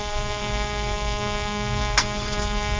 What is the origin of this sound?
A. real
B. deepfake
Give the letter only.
B